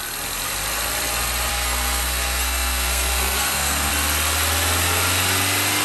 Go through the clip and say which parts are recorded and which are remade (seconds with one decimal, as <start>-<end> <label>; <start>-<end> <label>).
0.0-1.5 recorded; 1.5-3.9 remade; 3.9-5.8 recorded